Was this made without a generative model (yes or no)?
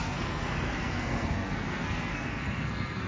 no